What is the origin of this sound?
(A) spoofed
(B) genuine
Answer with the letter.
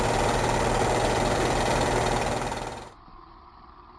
A